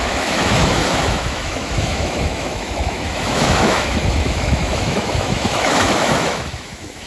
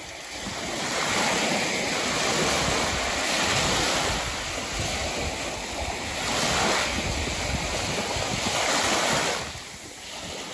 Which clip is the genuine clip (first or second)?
second